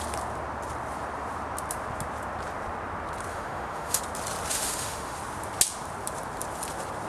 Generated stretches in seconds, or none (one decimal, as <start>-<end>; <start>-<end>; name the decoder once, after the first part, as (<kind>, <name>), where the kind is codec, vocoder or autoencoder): 3.3-4.0 (autoencoder, DAC-VAE); 4.5-5.2